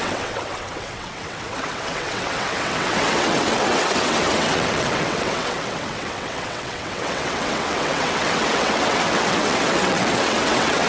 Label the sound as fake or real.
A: fake